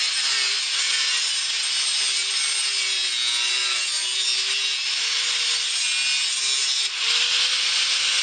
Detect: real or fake real